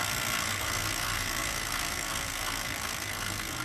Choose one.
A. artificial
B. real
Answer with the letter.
A